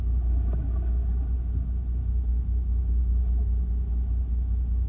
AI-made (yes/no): no